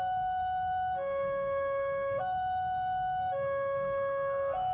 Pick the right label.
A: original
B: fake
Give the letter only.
B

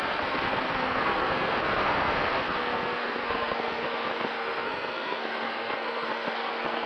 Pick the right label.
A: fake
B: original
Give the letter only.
A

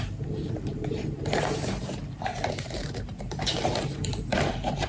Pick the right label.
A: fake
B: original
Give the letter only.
A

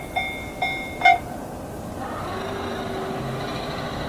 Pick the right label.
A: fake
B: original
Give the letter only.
B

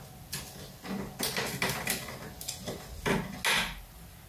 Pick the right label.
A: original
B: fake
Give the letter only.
A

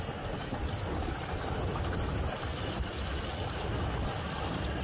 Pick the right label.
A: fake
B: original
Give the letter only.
B